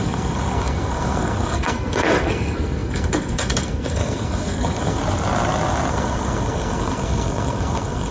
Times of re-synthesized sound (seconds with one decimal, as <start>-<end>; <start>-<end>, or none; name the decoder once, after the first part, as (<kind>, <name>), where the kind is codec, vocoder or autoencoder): 0.0-5.0 (codec, SNAC); 5.9-8.1